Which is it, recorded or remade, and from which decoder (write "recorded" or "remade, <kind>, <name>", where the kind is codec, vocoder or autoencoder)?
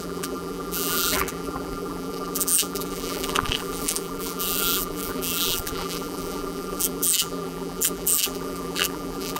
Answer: remade, vocoder, BigVGAN v2